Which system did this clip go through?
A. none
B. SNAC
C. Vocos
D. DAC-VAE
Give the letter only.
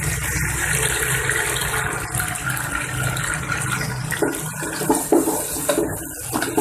A